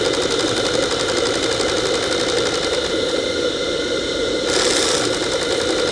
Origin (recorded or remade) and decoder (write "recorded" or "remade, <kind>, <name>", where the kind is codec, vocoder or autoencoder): recorded